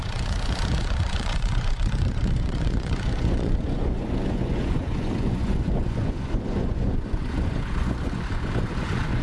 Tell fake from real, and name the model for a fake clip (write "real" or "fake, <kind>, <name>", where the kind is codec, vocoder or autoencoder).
fake, vocoder, Vocos